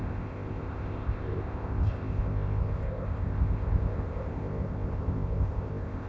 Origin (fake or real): fake